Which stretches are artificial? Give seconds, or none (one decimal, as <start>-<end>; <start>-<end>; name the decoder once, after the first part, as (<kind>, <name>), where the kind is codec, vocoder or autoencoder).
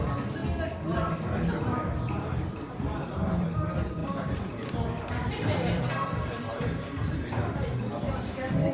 0.0-0.4 (vocoder, BigVGAN v2); 1.1-8.7